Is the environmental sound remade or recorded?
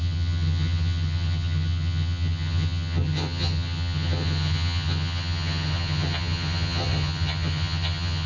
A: remade